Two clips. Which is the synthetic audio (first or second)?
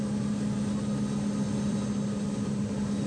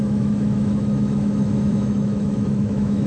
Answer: second